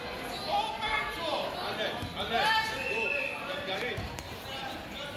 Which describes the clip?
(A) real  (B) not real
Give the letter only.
A